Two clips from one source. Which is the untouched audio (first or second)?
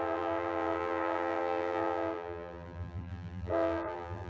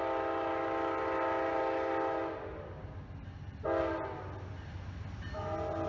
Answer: second